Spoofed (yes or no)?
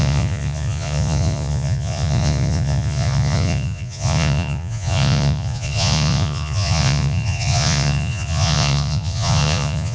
yes